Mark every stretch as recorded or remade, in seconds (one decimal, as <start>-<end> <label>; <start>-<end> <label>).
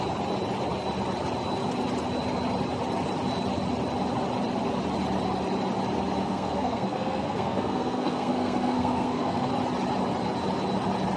0.0-6.2 recorded; 6.2-9.5 remade; 9.5-11.2 recorded